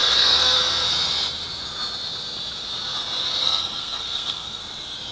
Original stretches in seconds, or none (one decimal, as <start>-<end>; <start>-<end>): 0.6-3.4; 4.6-5.1